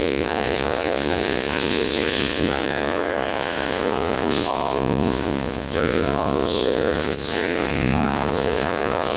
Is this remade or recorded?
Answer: remade